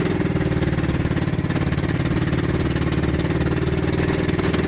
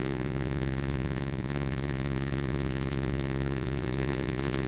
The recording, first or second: first